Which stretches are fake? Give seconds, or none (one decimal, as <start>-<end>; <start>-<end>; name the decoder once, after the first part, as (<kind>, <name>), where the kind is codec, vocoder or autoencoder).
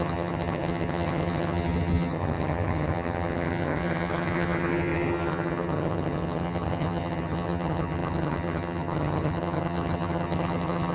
0.0-10.9 (vocoder, HiFi-GAN)